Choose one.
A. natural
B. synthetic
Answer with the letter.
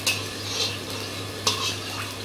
A